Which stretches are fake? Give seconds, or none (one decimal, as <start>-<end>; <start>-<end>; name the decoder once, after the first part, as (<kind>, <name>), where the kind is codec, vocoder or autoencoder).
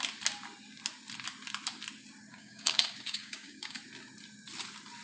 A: 2.3-3.8 (codec, DAC)